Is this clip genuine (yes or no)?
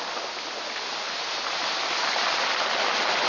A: yes